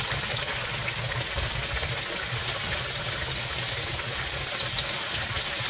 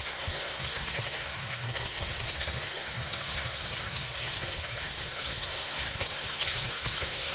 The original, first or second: first